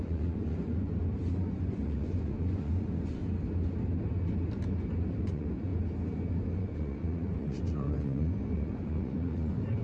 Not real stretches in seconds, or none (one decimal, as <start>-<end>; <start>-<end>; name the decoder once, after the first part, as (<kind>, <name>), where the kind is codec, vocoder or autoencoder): 0.0-0.9 (vocoder, Vocos); 1.4-3.2; 5.2-5.7; 6.6-9.8